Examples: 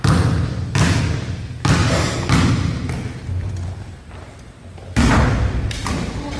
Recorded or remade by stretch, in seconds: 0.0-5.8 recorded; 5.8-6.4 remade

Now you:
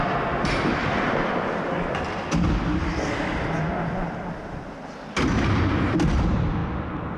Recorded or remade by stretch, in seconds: 0.0-7.2 recorded